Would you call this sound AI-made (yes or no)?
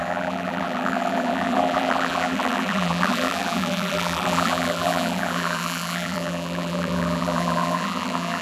yes